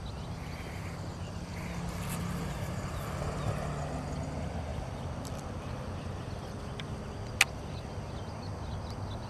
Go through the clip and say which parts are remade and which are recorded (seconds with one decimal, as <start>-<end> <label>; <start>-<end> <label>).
0.0-4.7 recorded; 4.7-7.0 remade; 7.0-9.3 recorded